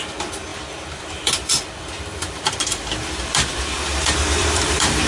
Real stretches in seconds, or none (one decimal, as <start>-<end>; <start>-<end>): 0.0-0.5; 3.6-4.4